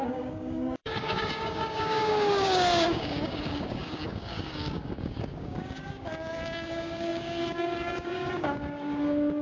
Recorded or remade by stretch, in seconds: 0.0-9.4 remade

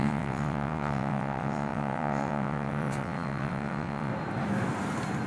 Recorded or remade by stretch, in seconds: 0.0-4.1 remade; 4.1-5.3 recorded

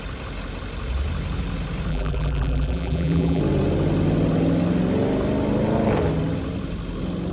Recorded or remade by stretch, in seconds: 0.0-1.9 recorded; 1.9-3.4 remade; 3.4-7.3 recorded

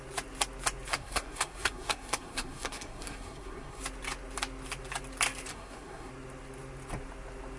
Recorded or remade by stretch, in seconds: 0.0-0.9 recorded; 0.9-3.8 remade; 3.8-5.5 recorded; 5.5-6.1 remade; 6.1-7.6 recorded

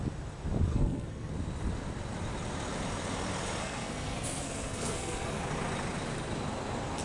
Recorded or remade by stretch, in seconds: 0.0-0.7 recorded; 0.7-1.3 remade; 1.3-3.6 recorded; 3.6-5.4 remade; 5.4-7.0 recorded

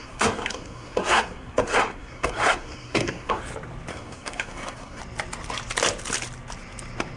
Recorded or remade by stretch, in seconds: 0.0-3.4 remade; 3.4-3.9 recorded; 3.9-5.0 remade; 5.0-7.2 recorded

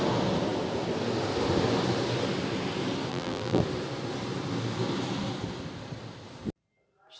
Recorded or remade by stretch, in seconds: 0.0-3.1 recorded; 3.1-3.6 remade; 3.6-7.2 recorded

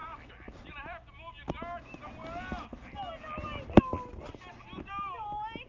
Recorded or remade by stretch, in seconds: 0.0-0.7 remade; 0.7-5.7 recorded